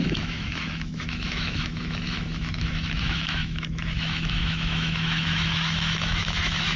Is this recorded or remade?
remade